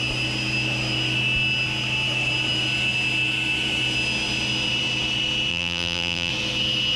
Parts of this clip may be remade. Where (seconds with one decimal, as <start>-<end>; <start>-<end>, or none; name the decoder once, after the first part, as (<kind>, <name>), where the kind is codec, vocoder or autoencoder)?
5.5-6.3 (vocoder, BigVGAN v2)